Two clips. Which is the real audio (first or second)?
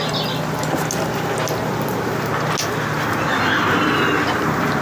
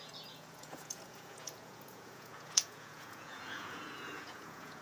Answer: first